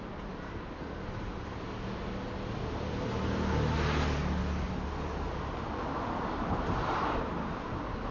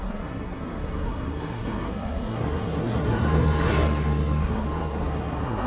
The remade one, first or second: second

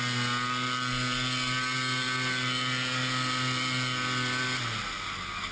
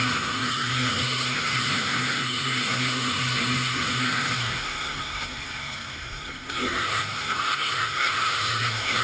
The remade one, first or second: second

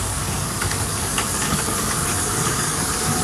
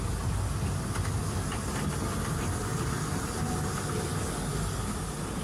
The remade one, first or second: first